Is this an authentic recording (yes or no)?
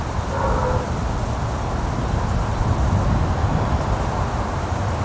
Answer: yes